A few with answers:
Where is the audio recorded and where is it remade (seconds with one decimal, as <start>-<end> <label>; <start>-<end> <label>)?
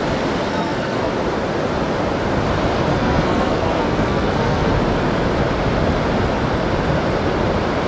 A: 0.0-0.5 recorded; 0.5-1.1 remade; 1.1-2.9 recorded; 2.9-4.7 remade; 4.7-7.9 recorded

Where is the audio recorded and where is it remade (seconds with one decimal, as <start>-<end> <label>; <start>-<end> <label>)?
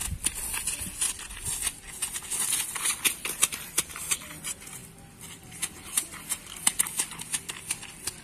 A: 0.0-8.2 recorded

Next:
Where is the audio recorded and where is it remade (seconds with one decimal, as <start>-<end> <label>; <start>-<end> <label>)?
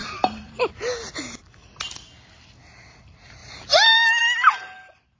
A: 0.0-0.7 remade; 0.7-3.4 recorded; 3.4-4.2 remade; 4.2-5.2 recorded